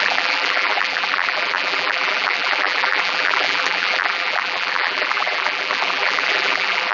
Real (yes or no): no